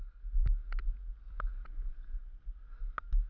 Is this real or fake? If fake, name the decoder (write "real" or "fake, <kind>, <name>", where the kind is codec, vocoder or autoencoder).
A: real